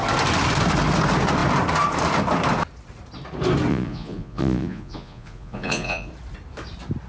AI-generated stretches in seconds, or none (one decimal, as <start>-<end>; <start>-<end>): 3.7-6.1